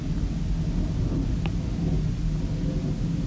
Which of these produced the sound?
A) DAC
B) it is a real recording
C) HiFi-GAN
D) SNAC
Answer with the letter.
B